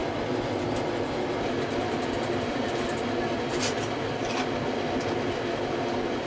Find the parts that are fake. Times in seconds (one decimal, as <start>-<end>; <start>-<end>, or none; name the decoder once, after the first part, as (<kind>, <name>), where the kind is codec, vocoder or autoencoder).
none